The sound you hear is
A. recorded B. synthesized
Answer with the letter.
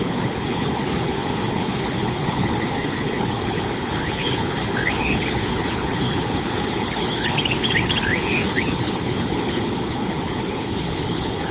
B